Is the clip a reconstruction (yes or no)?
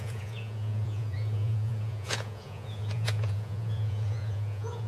yes